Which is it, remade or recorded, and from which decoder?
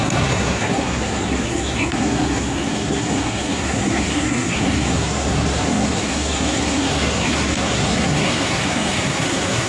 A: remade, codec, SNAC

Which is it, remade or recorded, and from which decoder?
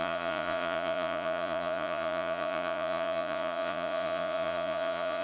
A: remade, vocoder, Vocos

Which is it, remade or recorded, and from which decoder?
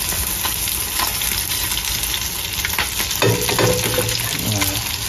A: recorded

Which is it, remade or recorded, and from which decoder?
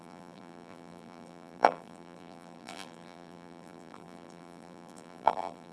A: remade, vocoder, BigVGAN v2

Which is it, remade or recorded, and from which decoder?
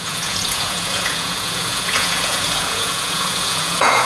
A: remade, vocoder, Vocos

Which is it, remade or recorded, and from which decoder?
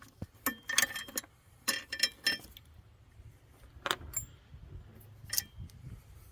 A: recorded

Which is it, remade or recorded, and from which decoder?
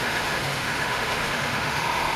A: remade, autoencoder, DAC-VAE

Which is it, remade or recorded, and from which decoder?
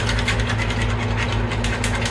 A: recorded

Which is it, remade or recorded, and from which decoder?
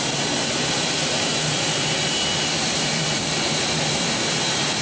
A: remade, vocoder, BigVGAN v2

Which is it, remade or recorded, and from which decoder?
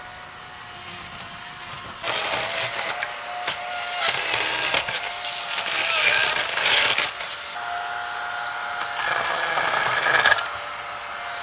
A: recorded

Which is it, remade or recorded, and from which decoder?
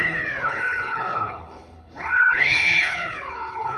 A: remade, codec, HILCodec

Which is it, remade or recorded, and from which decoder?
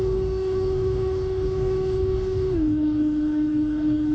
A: remade, codec, DAC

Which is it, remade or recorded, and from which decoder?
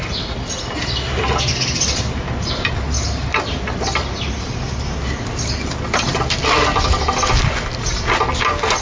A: recorded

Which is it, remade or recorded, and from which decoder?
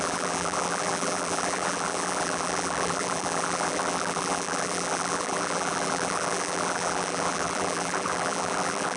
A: remade, vocoder, BigVGAN v2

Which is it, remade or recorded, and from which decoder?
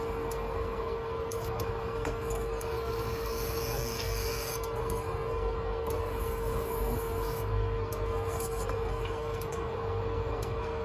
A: remade, codec, SNAC